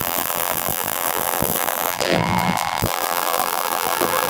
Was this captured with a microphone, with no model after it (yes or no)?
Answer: no